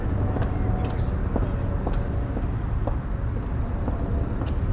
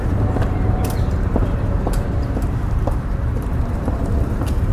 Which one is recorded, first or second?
first